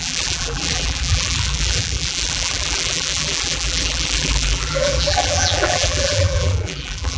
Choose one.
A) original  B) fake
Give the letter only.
B